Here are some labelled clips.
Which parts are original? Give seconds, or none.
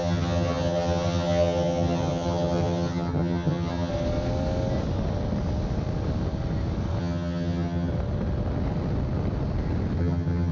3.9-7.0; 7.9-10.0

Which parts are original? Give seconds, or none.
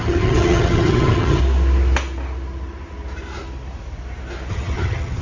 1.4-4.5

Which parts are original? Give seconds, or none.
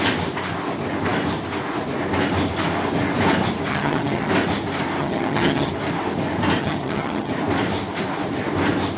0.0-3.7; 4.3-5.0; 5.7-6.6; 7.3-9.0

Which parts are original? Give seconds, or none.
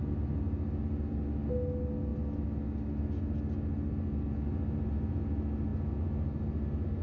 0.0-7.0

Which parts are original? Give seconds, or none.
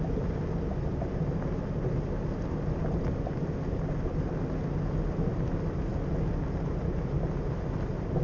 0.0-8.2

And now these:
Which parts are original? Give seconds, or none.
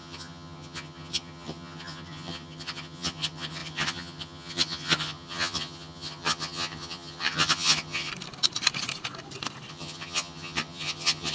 8.1-9.7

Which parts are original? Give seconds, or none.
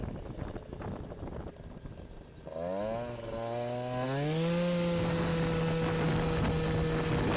0.0-7.4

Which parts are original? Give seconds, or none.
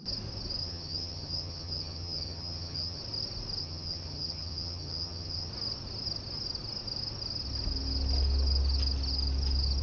0.0-0.6; 3.0-3.6; 5.5-9.8